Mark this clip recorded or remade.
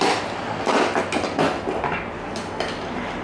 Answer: recorded